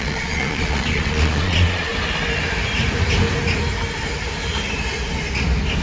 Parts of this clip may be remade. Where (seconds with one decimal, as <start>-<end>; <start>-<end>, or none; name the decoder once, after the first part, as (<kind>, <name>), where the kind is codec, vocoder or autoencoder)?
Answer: 0.0-1.9 (vocoder, Vocos)